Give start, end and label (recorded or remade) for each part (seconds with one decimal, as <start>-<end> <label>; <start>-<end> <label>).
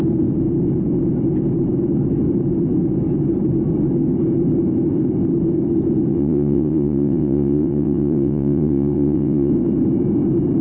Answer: 0.0-6.1 recorded; 6.1-9.5 remade; 9.5-10.6 recorded